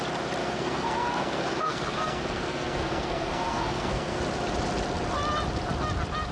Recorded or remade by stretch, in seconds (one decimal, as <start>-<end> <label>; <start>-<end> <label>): 0.0-0.4 recorded; 0.4-4.2 remade; 4.2-6.3 recorded